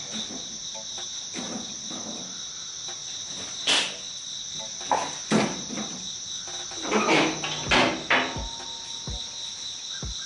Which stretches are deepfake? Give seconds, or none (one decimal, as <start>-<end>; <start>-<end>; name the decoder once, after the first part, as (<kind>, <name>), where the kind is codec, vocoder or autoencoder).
none